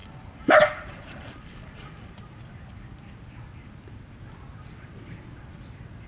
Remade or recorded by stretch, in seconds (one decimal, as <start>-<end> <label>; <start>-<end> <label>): 0.0-2.1 remade; 2.1-6.1 recorded